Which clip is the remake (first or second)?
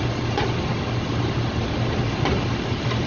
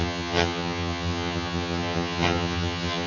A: second